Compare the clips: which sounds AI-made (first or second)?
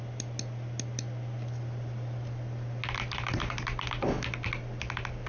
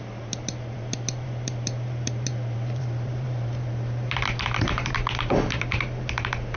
second